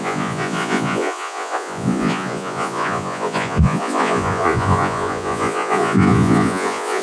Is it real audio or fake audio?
fake